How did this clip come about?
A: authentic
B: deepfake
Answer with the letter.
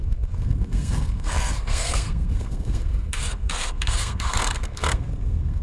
B